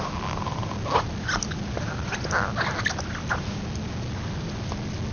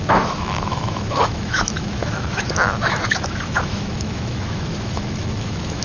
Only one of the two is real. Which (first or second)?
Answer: first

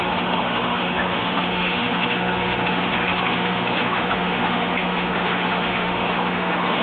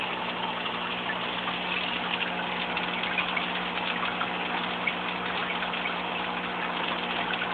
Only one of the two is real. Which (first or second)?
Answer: second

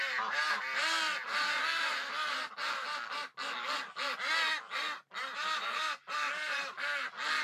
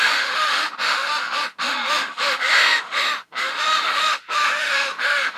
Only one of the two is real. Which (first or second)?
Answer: first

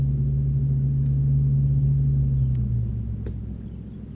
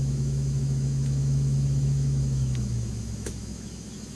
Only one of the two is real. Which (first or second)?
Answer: first